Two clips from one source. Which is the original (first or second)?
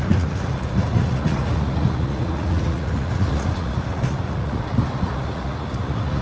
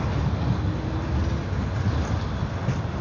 second